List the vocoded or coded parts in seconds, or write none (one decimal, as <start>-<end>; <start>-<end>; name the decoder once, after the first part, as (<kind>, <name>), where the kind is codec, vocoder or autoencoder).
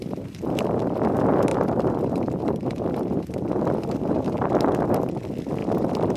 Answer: 0.0-0.8 (vocoder, BigVGAN v2); 1.5-4.4; 5.6-6.2